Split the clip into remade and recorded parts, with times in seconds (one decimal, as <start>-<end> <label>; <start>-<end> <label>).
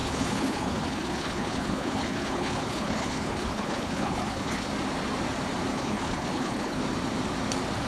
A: 0.0-4.7 remade; 4.7-5.7 recorded; 5.7-6.8 remade; 6.8-7.9 recorded